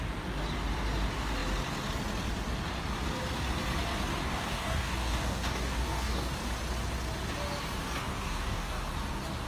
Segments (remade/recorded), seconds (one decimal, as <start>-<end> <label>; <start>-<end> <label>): 0.0-4.2 recorded; 4.2-6.3 remade; 6.3-8.0 recorded; 8.0-8.7 remade; 8.7-9.5 recorded